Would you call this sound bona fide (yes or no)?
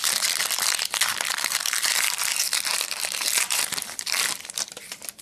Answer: no